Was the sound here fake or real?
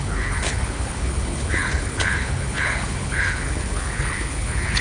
fake